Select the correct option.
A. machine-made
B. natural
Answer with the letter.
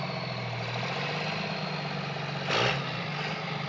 B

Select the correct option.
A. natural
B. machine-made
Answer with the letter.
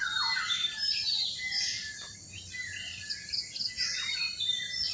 A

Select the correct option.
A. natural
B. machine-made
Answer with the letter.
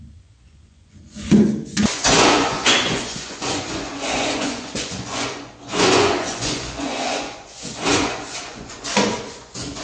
B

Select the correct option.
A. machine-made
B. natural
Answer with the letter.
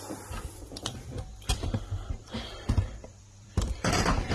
A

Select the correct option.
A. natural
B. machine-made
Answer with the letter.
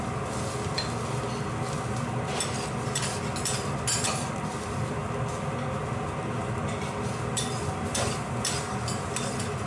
A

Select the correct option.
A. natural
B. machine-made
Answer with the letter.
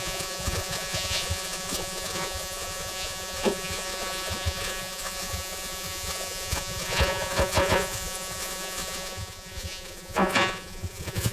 B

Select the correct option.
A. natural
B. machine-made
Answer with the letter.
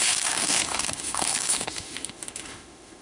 B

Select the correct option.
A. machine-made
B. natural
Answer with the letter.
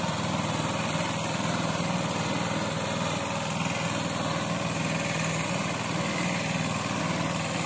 B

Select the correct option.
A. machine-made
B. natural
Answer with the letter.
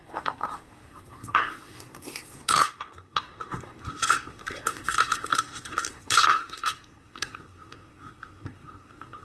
A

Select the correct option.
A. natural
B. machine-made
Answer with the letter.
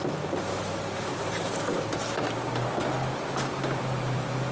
A